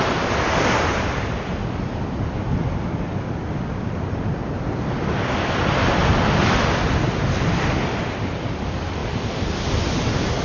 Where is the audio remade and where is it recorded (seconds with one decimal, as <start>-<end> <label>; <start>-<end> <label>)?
0.0-10.4 recorded